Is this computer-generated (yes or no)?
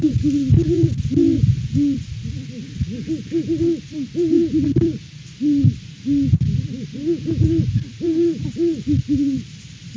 yes